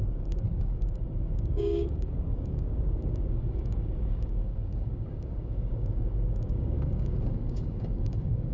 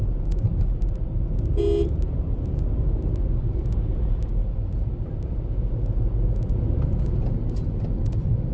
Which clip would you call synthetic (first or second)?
first